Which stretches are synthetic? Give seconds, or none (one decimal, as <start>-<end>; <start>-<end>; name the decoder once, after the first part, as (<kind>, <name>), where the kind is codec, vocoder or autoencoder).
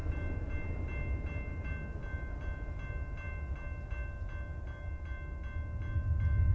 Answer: none